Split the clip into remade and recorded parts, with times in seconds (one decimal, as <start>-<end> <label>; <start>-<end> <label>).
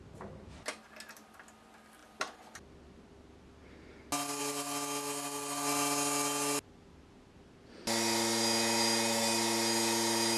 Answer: 0.0-10.4 recorded